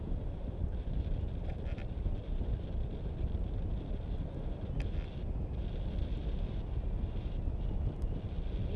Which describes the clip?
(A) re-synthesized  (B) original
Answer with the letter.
B